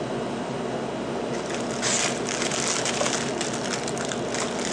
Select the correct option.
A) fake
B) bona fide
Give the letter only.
B